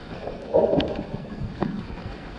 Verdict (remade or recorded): remade